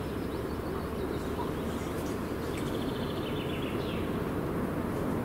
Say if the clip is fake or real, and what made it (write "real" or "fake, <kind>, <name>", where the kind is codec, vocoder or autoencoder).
real